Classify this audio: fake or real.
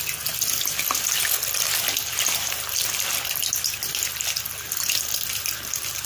real